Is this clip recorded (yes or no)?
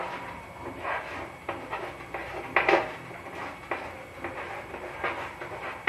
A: yes